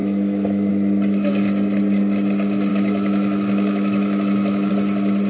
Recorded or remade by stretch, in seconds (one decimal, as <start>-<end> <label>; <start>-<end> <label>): 0.0-0.7 remade; 0.7-2.7 recorded; 2.7-4.7 remade; 4.7-5.3 recorded